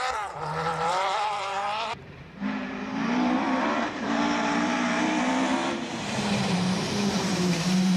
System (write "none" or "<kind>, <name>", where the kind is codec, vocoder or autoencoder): vocoder, BigVGAN v2